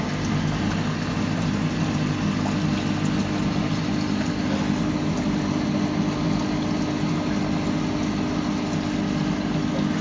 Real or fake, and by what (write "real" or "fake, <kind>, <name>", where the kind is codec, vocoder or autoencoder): real